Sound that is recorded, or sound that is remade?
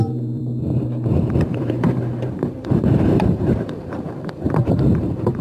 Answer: remade